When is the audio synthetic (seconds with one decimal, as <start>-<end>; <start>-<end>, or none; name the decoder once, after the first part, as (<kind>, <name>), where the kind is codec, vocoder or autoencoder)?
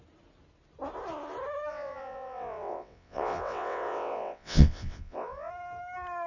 1.7-5.5 (vocoder, WaveNeXt)